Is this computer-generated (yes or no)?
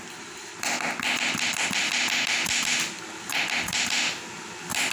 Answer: no